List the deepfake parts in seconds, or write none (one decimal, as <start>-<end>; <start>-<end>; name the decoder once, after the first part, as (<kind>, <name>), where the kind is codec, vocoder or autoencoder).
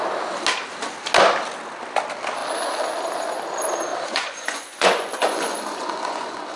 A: 3.9-6.6 (vocoder, Vocos)